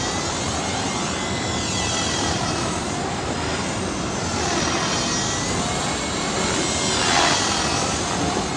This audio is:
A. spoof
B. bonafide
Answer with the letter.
B